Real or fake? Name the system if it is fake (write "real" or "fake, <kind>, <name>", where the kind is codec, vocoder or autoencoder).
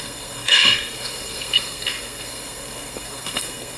fake, codec, SNAC